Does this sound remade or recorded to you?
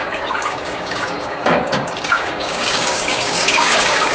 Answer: remade